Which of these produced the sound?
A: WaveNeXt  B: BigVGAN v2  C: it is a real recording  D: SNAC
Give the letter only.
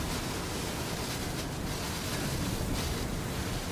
C